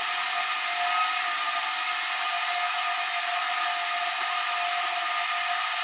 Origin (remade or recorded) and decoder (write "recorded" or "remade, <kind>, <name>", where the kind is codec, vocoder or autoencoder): recorded